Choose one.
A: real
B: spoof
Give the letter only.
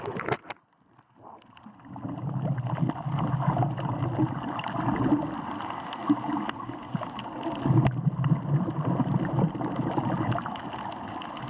A